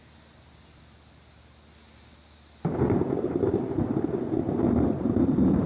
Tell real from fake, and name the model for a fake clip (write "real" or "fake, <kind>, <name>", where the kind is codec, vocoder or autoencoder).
real